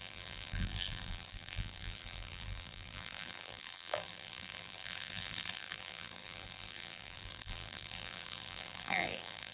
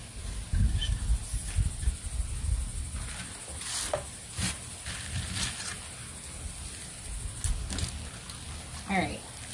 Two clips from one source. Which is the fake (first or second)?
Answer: first